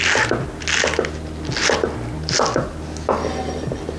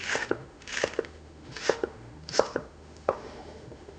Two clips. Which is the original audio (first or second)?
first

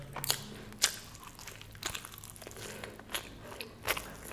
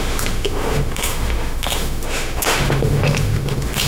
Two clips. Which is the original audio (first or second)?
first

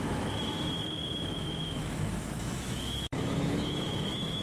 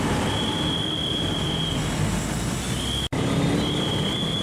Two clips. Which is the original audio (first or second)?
second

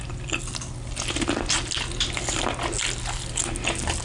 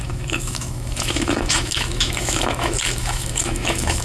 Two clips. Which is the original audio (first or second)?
first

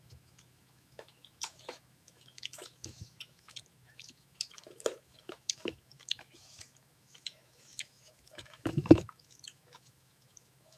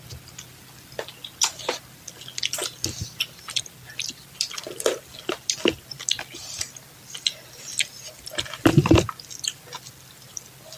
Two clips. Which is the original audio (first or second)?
second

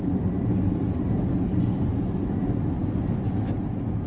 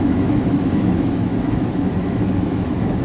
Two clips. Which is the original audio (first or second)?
first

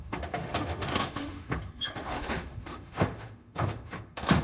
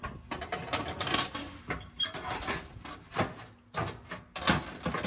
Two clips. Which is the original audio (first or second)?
second